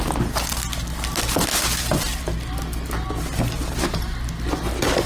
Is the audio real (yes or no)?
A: yes